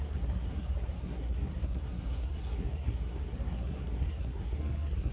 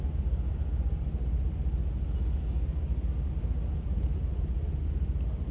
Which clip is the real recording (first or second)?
second